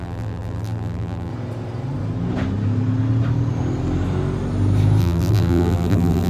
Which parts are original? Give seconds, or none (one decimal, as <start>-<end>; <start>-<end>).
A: 1.3-5.0